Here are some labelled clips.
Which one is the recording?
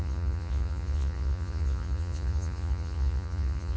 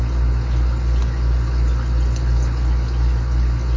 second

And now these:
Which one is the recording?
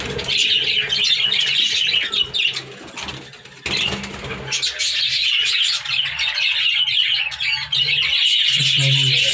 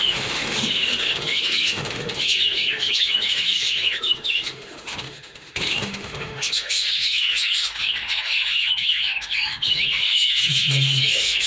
first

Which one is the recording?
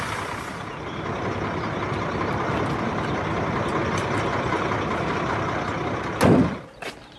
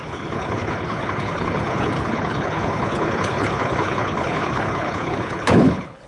first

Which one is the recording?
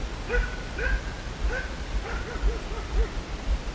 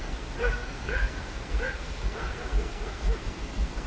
first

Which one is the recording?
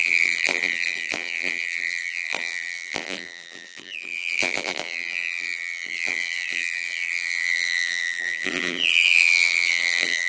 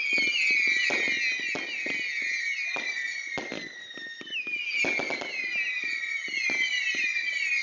second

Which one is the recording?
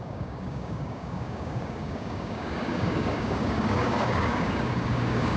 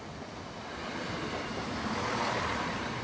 second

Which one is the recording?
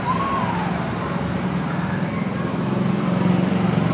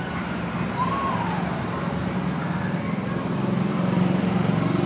first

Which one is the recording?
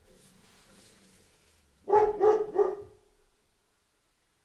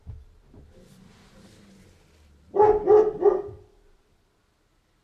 second